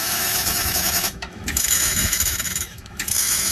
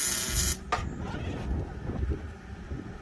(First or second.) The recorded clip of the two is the second